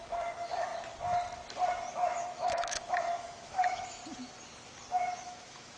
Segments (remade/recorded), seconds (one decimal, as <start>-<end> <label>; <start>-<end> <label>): 0.0-0.7 remade; 0.7-1.9 recorded; 1.9-4.0 remade; 4.0-4.9 recorded; 4.9-5.8 remade